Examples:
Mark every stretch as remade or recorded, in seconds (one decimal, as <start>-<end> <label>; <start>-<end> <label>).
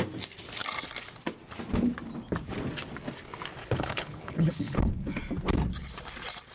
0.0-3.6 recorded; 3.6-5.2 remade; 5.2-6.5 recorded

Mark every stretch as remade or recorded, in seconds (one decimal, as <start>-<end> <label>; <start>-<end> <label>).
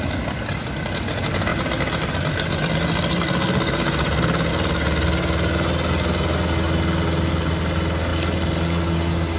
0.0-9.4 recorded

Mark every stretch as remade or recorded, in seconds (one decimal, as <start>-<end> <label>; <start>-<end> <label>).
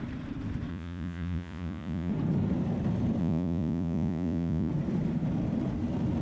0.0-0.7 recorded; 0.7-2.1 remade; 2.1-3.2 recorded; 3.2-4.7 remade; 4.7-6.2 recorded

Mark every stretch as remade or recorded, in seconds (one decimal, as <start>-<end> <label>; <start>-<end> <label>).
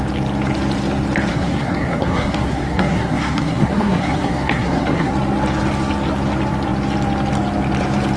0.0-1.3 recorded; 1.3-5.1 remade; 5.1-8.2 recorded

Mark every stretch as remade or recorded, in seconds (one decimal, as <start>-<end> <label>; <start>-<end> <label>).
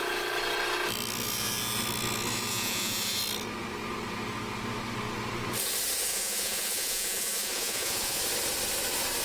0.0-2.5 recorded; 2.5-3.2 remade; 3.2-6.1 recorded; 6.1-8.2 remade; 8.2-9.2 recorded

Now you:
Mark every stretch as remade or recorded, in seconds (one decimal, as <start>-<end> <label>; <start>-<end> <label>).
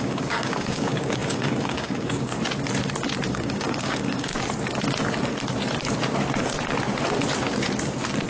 0.0-2.3 remade; 2.3-3.3 recorded; 3.3-4.3 remade; 4.3-8.3 recorded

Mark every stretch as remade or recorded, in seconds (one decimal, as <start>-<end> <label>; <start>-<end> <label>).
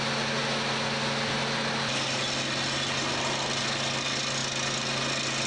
0.0-5.5 recorded